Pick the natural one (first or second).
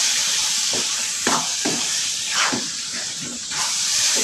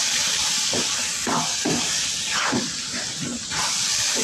second